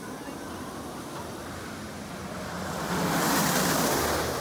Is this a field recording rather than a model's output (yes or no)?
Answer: yes